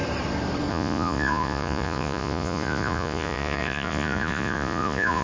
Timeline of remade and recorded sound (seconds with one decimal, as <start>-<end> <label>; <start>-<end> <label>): 0.0-0.7 recorded; 0.7-5.2 remade